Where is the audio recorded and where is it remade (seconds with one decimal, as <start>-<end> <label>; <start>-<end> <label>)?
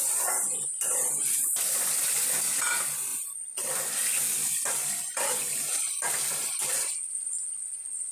0.0-8.1 recorded